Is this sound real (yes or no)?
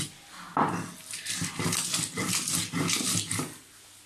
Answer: yes